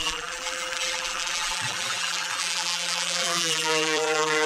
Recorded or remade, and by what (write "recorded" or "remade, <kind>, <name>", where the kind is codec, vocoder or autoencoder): remade, vocoder, BigVGAN v2